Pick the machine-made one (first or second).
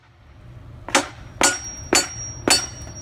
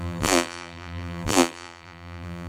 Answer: second